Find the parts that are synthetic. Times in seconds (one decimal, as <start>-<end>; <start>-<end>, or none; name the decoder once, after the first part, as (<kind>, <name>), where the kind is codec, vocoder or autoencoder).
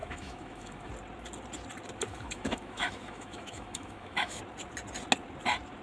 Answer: 0.0-0.9 (autoencoder, DAC-VAE); 2.1-4.4